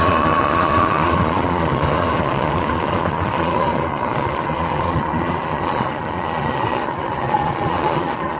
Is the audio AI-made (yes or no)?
yes